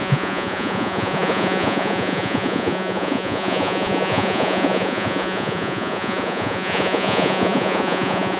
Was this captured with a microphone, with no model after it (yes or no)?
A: no